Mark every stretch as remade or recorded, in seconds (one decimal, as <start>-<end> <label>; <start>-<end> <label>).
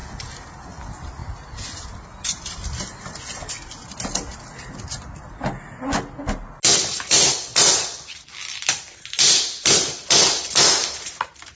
0.0-0.5 remade; 0.5-6.7 recorded; 6.7-9.0 remade; 9.0-11.5 recorded